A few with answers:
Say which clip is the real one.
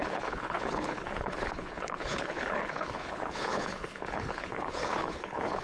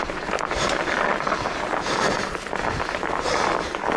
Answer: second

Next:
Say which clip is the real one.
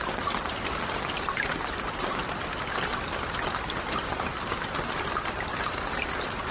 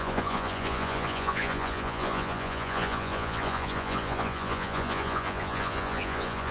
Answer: first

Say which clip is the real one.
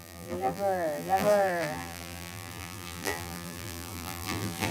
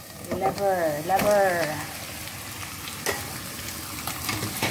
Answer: second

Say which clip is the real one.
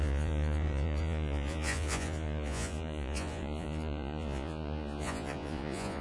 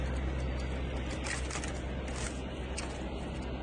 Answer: second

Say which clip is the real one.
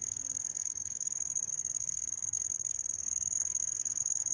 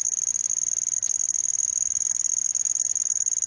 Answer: second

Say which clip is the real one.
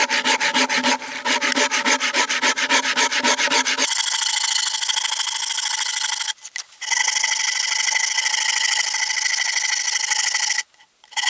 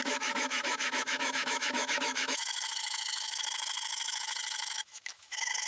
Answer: first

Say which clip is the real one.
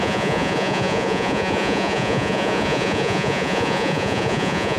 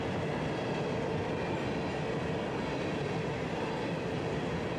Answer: second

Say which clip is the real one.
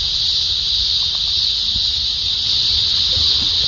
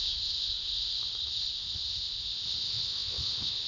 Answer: first